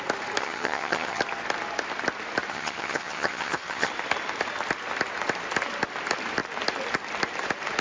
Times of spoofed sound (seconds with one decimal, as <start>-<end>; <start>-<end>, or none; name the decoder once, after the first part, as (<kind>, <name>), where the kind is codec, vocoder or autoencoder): 0.4-1.2 (vocoder, HiFi-GAN); 2.5-3.9